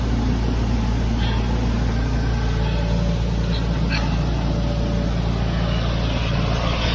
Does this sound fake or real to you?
real